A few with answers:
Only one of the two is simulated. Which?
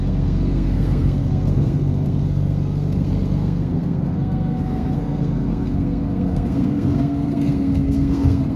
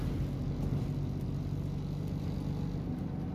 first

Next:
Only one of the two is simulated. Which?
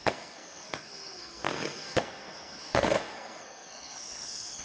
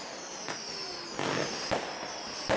first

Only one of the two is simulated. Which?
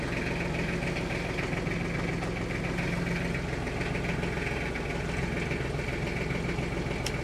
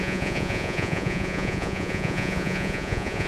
second